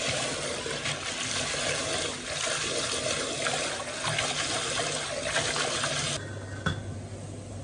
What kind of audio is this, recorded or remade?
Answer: recorded